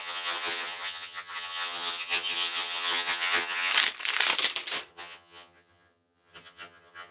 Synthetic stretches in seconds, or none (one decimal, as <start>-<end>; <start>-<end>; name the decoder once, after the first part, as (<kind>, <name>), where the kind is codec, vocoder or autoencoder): 0.0-3.7 (vocoder, HiFi-GAN); 4.9-7.1